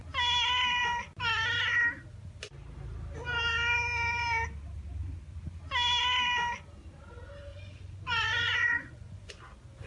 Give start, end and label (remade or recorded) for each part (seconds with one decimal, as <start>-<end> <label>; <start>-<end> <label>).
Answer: 0.0-7.5 recorded; 7.5-9.3 remade; 9.3-9.9 recorded